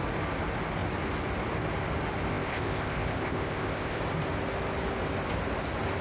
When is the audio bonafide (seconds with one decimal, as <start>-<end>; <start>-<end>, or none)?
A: 0.0-2.3; 4.0-6.0